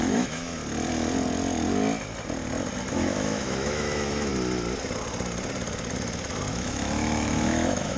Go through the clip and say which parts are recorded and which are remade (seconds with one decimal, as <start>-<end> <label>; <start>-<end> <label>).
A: 0.0-0.6 remade; 0.6-2.9 recorded; 2.9-4.3 remade; 4.3-6.5 recorded; 6.5-8.0 remade